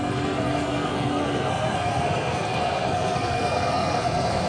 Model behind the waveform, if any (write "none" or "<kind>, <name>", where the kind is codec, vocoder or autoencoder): codec, SNAC